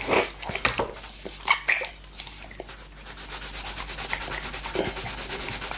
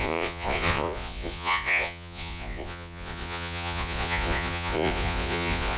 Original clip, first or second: first